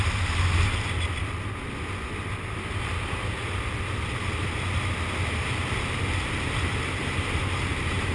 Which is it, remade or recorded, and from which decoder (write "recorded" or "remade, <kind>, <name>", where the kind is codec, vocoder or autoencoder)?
recorded